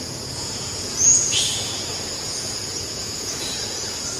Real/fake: fake